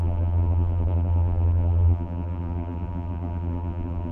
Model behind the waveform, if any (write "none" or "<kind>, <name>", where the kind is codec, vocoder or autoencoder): vocoder, BigVGAN v2